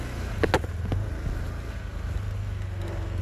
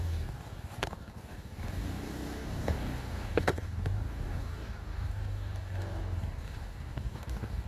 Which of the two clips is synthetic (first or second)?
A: second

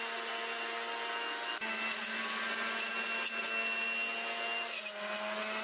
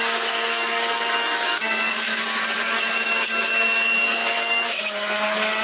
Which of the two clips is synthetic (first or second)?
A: second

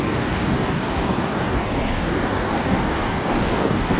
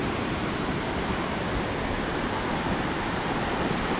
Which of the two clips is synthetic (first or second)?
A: first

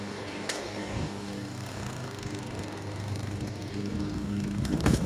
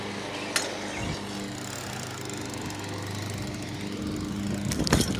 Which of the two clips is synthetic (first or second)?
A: first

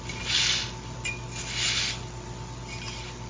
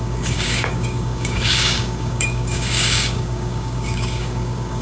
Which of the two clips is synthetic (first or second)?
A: second